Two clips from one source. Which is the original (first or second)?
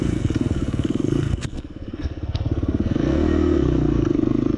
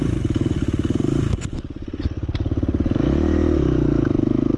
second